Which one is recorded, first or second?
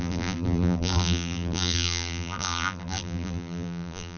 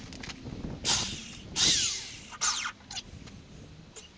second